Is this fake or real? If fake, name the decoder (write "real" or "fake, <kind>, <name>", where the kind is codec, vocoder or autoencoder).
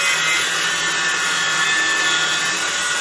real